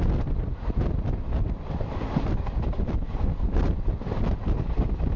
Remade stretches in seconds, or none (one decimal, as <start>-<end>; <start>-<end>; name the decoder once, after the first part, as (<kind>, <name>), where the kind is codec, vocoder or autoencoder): none